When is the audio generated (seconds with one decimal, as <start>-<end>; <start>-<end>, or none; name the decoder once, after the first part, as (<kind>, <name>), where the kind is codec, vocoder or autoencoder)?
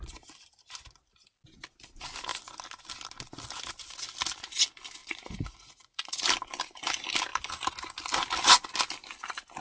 5.0-6.2 (vocoder, Vocos)